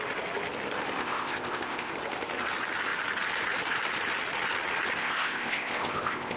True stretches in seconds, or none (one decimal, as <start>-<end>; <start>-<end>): 0.0-1.0; 1.9-5.0